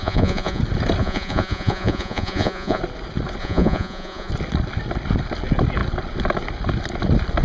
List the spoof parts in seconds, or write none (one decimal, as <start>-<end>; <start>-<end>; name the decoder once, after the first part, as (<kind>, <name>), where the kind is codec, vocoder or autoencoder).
0.0-0.6 (vocoder, Vocos); 1.0-2.8; 3.4-4.3